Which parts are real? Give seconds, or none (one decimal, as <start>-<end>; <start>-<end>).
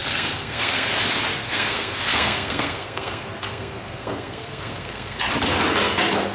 0.9-1.4; 5.2-6.3